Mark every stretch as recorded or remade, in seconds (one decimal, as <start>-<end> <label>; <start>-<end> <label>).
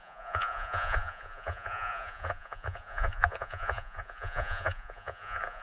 0.0-5.6 remade